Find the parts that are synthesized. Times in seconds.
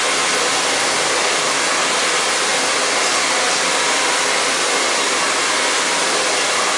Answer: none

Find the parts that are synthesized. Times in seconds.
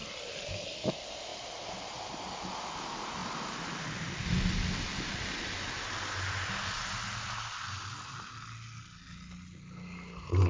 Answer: none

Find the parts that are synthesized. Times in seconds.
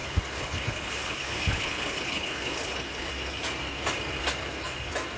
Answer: 0.0-3.1 (codec, HILCodec)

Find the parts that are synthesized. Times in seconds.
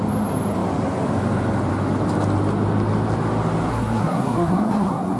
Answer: 3.7-5.2 (codec, SNAC)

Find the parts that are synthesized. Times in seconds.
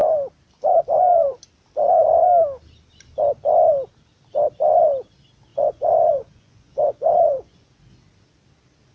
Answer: 5.5-7.8 (vocoder, Vocos)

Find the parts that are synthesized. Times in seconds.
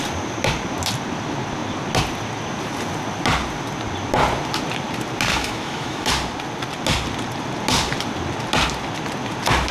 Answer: 5.3-6.1 (autoencoder, DAC-VAE)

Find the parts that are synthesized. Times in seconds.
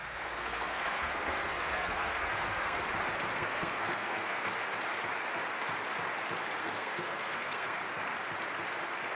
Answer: 0.0-2.8 (codec, SNAC); 3.3-4.5; 6.6-7.8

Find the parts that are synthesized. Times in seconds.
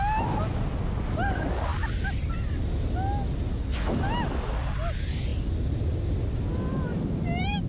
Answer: 6.9-7.7 (vocoder, BigVGAN v2)